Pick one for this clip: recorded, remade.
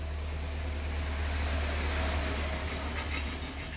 recorded